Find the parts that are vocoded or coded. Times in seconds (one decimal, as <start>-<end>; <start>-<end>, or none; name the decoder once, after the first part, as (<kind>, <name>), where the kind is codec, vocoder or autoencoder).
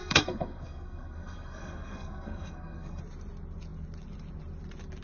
0.0-3.0 (codec, SNAC)